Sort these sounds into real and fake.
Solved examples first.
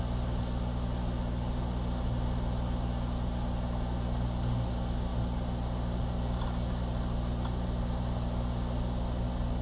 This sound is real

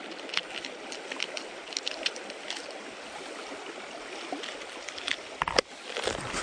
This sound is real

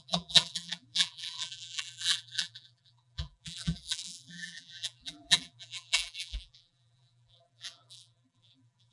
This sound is fake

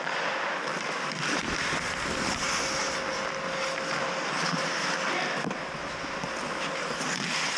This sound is real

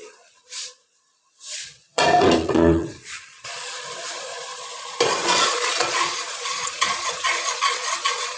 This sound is fake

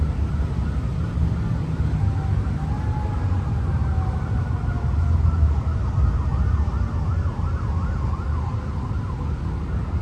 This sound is real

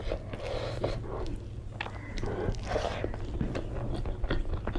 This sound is real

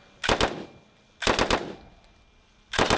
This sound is real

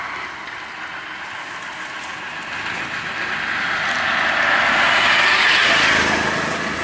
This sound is real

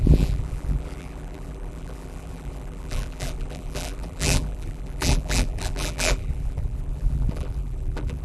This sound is fake